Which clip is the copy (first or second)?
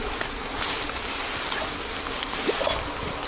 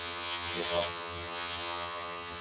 second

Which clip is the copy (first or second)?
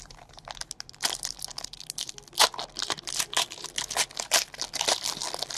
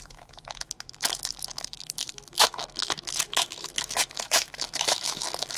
second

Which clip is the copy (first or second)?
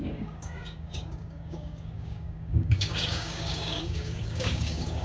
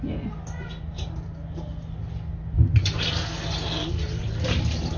first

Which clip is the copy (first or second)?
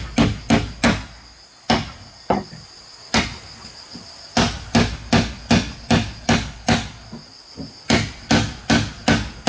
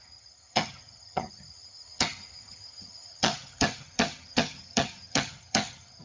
second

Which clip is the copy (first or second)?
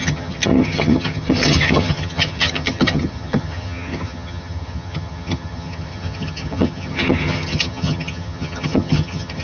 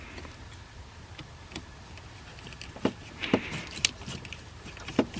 first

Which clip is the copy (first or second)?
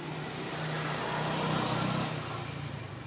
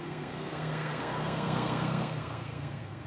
second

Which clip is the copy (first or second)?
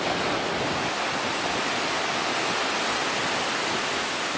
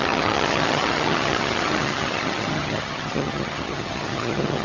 second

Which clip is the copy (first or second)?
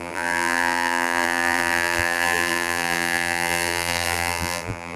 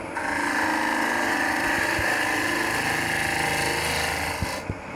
first